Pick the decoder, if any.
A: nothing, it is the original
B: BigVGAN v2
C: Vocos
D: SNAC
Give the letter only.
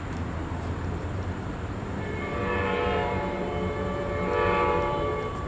B